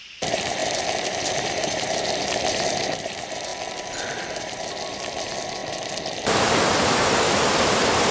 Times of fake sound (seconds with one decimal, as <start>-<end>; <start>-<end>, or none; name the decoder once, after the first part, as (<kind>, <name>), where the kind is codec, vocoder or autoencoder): 0.0-3.5 (vocoder, BigVGAN v2); 4.4-8.1